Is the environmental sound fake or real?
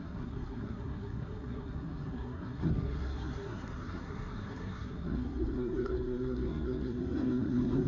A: fake